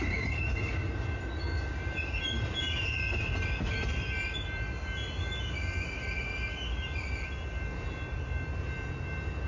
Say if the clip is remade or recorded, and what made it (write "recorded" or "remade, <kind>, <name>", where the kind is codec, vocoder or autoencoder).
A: recorded